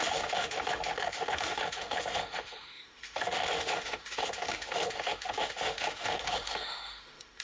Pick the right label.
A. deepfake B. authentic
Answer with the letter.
A